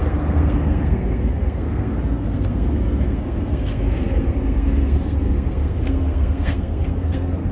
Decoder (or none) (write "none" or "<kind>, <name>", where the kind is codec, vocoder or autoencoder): codec, SNAC